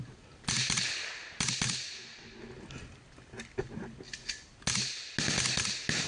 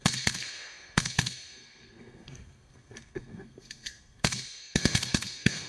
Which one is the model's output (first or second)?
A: second